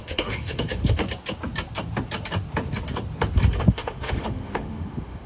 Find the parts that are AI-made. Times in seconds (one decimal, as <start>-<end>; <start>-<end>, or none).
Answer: 0.0-1.0; 3.6-5.3

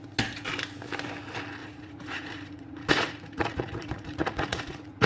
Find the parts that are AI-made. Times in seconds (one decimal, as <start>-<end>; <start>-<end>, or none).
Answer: 1.6-5.1

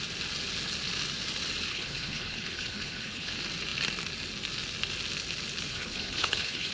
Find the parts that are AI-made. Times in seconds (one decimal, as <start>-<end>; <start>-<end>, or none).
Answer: 1.7-3.3; 5.7-6.7

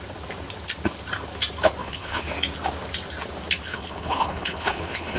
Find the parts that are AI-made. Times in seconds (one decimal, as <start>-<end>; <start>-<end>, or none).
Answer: 1.8-2.3; 3.7-5.2

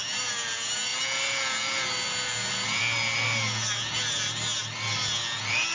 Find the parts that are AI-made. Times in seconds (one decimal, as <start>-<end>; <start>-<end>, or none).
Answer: none